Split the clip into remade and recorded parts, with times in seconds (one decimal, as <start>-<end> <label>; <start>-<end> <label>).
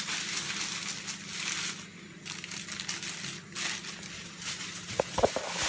0.0-5.7 recorded